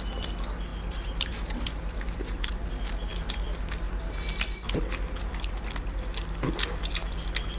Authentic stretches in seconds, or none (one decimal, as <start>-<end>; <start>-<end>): 0.0-0.7; 2.7-7.6